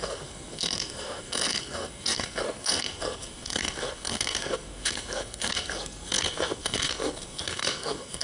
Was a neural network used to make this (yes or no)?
yes